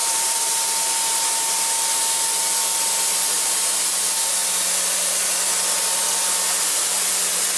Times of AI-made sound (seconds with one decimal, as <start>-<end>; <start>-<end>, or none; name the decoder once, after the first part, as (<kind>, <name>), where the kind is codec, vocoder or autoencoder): 0.0-0.5 (vocoder, BigVGAN v2)